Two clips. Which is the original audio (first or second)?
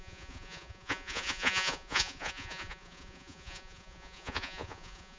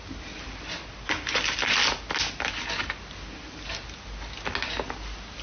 second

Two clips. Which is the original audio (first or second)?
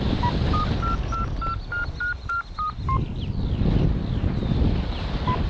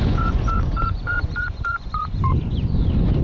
first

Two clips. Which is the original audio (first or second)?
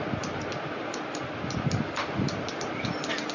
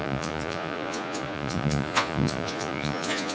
first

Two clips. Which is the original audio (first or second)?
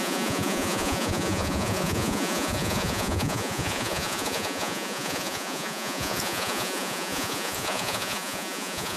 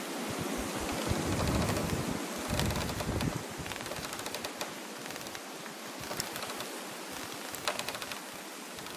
second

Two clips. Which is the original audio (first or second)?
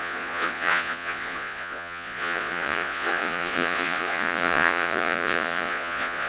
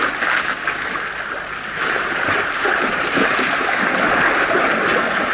second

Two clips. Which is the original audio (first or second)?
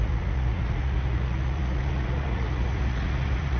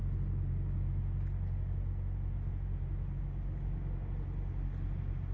second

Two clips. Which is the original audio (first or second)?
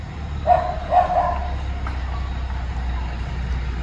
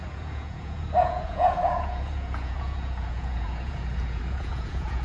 first